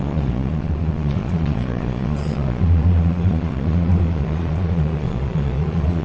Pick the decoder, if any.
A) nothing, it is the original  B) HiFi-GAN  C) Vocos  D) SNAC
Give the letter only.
C